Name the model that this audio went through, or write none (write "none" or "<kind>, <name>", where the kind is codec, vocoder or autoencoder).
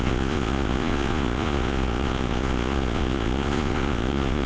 vocoder, Vocos